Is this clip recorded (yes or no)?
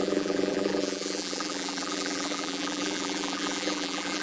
no